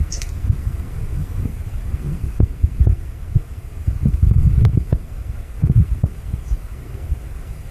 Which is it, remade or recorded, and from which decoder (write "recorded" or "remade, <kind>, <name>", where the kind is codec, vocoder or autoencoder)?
remade, codec, SNAC